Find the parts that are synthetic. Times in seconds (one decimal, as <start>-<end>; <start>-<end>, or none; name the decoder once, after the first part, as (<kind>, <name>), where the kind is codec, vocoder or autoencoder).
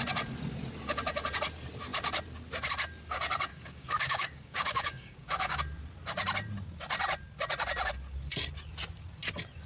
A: 3.5-5.6 (codec, DAC)